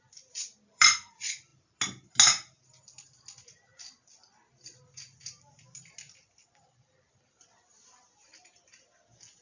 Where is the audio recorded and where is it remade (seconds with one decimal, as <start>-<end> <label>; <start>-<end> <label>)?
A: 0.0-1.5 remade; 1.5-6.7 recorded; 6.7-9.4 remade